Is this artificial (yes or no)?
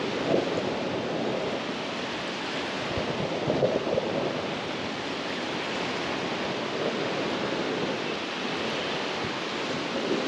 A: no